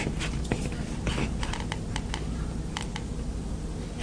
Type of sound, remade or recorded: recorded